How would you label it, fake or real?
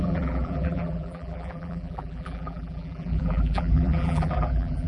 fake